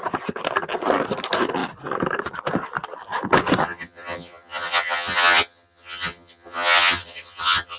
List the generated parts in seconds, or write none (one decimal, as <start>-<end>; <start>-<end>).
3.6-7.8